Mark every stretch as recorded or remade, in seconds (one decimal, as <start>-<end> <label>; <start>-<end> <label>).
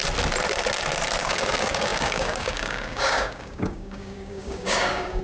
0.0-1.2 recorded; 1.2-5.2 remade